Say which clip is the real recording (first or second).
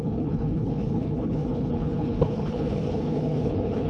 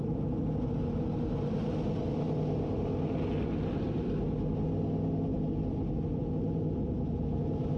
second